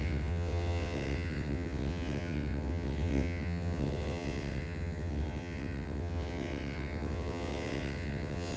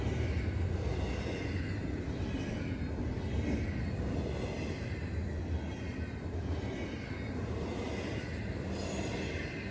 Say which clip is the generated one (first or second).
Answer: first